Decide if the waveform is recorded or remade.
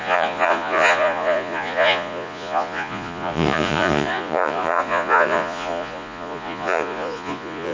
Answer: remade